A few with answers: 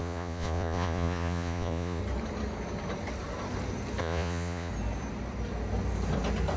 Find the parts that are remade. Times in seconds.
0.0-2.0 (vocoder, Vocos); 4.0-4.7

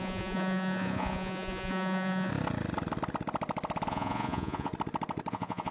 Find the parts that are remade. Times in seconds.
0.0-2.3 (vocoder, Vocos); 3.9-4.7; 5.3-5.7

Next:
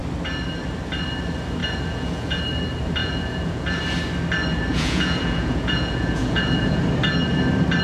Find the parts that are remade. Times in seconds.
1.6-2.4 (vocoder, Vocos); 3.0-3.8; 4.7-6.8

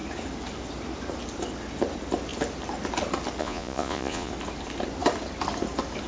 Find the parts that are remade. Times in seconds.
3.4-4.3 (vocoder, Vocos)

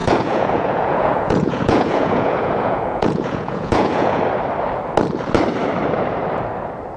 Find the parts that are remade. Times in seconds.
0.0-4.2 (vocoder, Vocos)

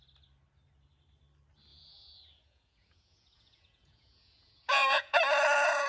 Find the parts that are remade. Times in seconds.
1.7-5.2 (vocoder, Vocos)

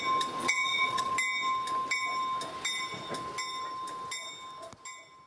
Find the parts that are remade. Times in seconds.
0.4-1.1 (vocoder, Vocos)